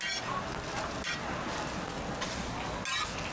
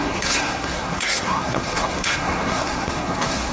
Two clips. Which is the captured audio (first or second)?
first